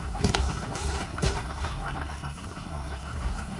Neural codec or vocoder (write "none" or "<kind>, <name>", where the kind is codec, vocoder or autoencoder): codec, SNAC